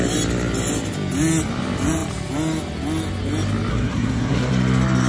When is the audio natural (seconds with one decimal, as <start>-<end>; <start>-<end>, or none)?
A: 0.0-3.7; 4.5-5.1